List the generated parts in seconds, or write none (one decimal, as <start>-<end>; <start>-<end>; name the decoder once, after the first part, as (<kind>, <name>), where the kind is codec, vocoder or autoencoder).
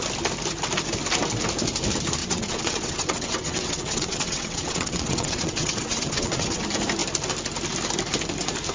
2.2-6.6 (vocoder, WaveNeXt)